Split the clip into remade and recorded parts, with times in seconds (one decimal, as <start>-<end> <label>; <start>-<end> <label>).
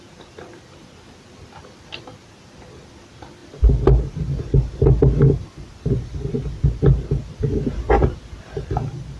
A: 0.0-9.2 recorded